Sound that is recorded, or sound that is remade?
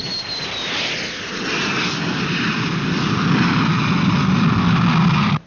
recorded